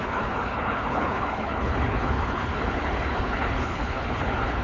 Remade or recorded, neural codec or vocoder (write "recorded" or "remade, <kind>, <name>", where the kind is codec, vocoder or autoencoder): remade, codec, HILCodec